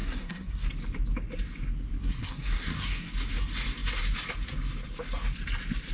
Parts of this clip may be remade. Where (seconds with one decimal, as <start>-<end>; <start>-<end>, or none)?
0.0-0.7; 2.0-3.1